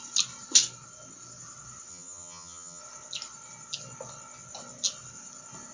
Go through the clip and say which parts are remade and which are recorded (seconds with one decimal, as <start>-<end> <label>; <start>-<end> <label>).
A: 0.0-1.9 recorded; 1.9-2.8 remade; 2.8-5.7 recorded